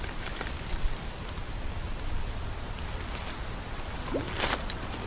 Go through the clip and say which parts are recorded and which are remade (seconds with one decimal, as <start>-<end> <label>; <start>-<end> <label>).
0.0-1.4 remade; 1.4-4.2 recorded; 4.2-5.1 remade